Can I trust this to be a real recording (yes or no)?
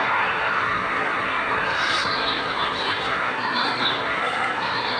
no